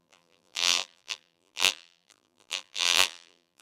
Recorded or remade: remade